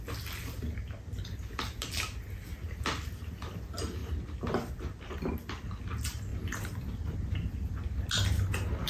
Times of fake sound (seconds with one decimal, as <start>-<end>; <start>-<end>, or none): 6.3-7.7